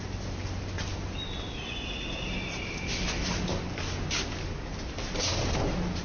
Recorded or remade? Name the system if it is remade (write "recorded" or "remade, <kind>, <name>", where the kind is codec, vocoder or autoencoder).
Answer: recorded